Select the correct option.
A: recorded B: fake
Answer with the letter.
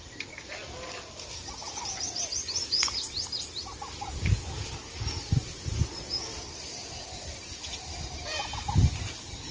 A